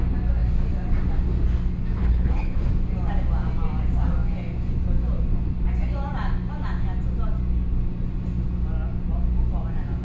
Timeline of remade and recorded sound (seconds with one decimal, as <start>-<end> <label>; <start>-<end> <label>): 0.0-2.0 recorded; 2.0-2.7 remade; 2.7-10.0 recorded